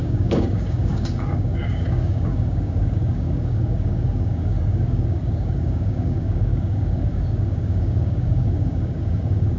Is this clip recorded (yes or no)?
no